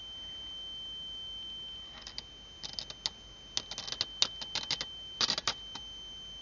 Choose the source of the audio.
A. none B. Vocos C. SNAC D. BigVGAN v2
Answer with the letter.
A